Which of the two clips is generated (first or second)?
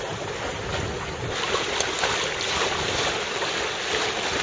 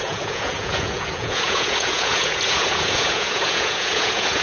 second